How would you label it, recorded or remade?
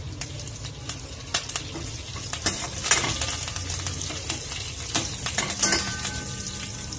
recorded